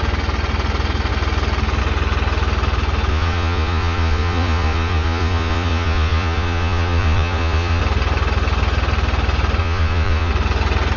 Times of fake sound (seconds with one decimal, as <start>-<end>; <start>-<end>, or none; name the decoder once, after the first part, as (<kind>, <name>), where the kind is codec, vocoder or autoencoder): 3.1-7.8 (vocoder, Vocos); 9.6-10.3